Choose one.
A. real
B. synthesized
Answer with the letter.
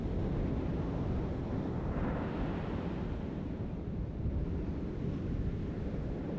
A